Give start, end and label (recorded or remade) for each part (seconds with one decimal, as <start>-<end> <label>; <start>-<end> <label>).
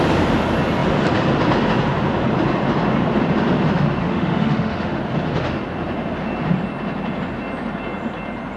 0.0-4.0 recorded; 4.0-5.0 remade; 5.0-8.6 recorded